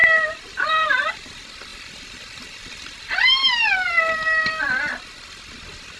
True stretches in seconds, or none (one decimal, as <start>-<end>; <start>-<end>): 1.1-1.7; 3.5-6.0